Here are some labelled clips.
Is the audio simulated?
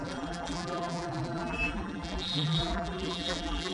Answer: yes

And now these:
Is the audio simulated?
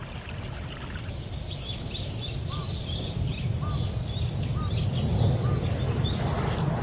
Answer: no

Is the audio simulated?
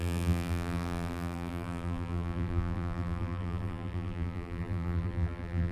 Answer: yes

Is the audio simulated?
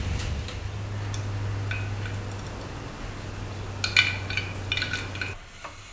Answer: no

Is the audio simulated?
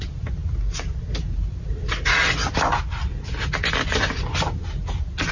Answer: no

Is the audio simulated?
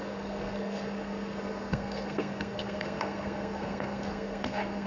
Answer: yes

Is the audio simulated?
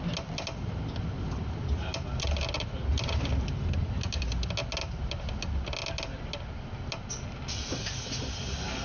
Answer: no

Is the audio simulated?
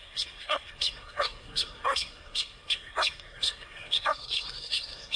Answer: yes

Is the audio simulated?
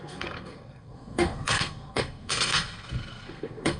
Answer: yes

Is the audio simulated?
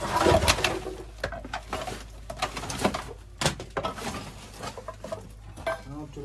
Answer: no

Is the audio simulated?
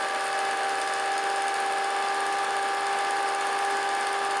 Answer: no